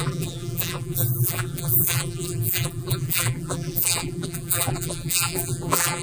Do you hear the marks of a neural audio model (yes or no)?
yes